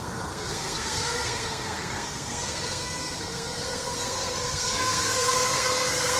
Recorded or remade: remade